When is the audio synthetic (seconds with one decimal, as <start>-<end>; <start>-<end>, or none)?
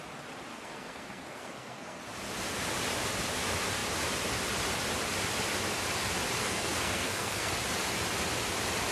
0.5-2.0; 6.4-7.5